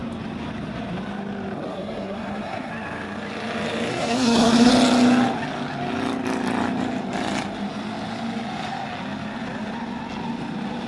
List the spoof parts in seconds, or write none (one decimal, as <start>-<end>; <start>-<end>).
1.7-2.7; 3.9-4.7